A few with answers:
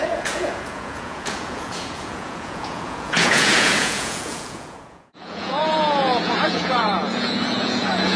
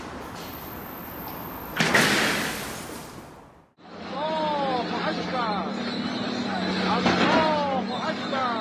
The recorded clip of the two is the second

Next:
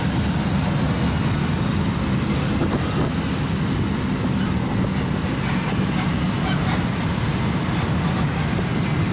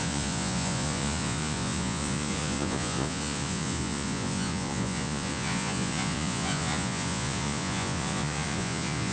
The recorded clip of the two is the first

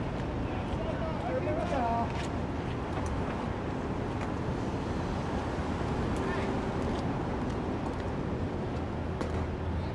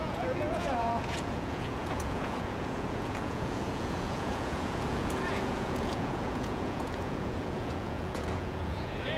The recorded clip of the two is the first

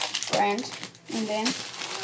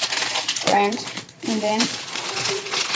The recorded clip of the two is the first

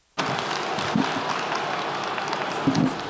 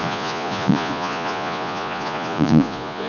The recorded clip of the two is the first